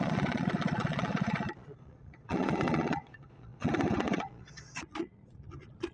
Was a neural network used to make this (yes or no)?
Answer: yes